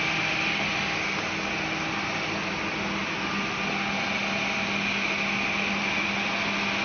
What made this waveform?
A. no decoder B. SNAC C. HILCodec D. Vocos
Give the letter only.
A